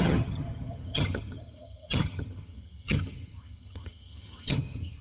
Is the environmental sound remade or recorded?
remade